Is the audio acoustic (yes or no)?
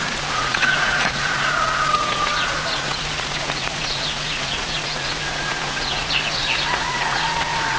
no